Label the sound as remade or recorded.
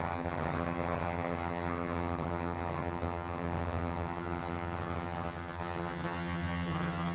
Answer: remade